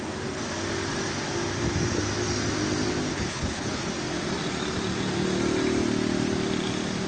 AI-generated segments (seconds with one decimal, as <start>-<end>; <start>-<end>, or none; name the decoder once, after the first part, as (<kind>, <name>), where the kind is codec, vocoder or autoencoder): 3.1-3.9 (codec, HILCodec)